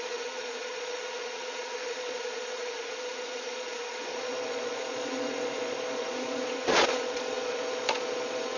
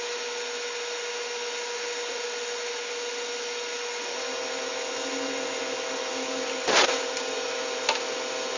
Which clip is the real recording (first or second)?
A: second